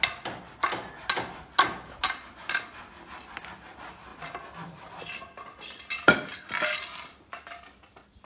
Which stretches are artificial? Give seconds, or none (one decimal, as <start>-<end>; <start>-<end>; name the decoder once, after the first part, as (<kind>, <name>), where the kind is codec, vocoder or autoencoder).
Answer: none